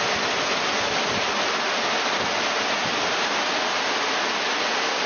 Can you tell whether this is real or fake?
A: real